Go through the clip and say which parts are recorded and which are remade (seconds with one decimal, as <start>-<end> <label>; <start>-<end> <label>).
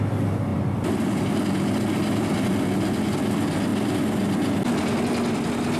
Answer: 0.0-0.5 recorded; 0.5-1.3 remade; 1.3-5.8 recorded